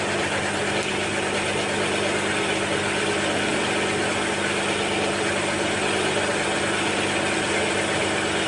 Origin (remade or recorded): recorded